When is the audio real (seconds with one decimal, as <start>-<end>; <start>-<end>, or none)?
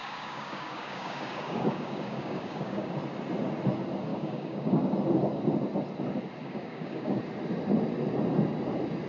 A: 2.9-4.1; 4.9-6.4; 7.2-9.1